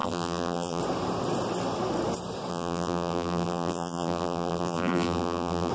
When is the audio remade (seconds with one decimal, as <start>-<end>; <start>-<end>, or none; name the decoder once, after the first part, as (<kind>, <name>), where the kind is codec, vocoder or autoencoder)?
0.0-0.8 (vocoder, BigVGAN v2); 2.5-5.7

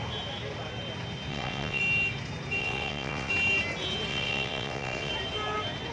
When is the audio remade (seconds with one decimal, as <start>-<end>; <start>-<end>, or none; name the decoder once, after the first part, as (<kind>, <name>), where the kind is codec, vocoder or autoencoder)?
1.3-1.8 (vocoder, WaveNeXt); 2.6-3.3; 4.1-5.1